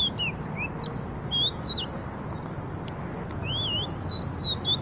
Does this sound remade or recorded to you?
recorded